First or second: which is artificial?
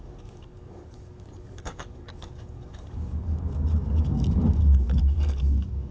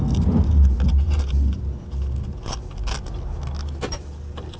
first